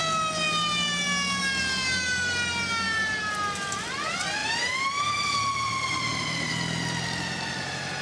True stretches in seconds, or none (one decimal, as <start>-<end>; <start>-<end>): 0.0-4.4; 6.5-8.0